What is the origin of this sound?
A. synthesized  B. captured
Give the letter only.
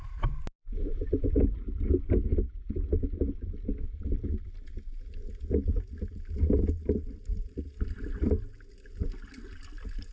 B